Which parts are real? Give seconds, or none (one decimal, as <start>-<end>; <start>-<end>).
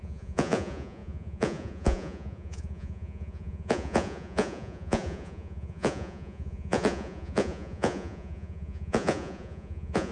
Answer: none